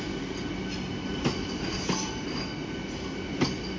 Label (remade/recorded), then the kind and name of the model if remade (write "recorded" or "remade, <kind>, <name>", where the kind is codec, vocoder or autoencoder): recorded